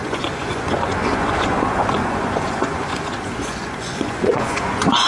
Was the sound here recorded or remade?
remade